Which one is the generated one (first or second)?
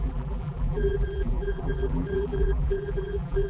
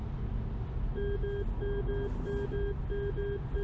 first